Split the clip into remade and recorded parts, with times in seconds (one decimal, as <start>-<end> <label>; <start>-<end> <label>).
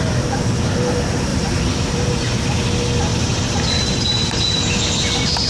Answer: 0.0-1.3 recorded; 1.3-2.5 remade; 2.5-3.1 recorded; 3.1-4.8 remade; 4.8-5.5 recorded